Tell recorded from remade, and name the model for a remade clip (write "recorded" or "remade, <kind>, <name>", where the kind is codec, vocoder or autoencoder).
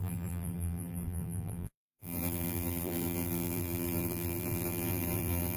remade, vocoder, BigVGAN v2